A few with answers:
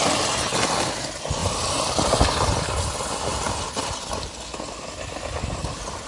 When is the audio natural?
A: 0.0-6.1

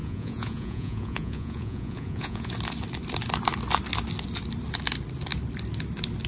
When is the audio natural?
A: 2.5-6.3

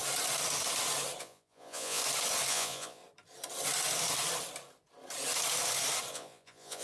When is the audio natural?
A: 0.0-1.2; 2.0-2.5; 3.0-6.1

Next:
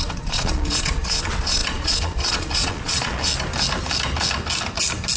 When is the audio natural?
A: 3.3-5.2

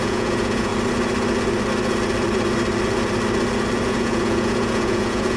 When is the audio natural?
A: 0.7-3.9